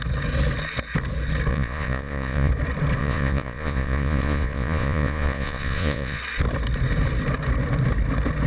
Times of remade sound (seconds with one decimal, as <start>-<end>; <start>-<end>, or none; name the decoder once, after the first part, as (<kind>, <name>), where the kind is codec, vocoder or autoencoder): 1.5-2.5 (vocoder, Vocos); 3.0-6.2